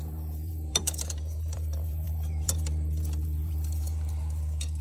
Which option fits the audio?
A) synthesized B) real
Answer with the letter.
A